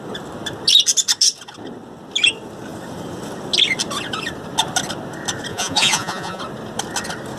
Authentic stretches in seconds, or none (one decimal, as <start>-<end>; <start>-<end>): 0.0-5.5; 6.4-7.4